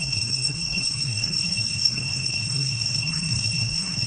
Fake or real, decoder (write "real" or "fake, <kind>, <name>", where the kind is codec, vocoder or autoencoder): fake, codec, SNAC